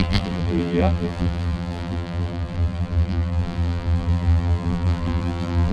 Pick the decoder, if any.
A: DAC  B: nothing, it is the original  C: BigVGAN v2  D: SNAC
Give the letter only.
C